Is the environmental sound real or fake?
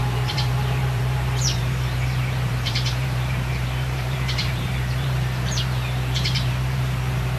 fake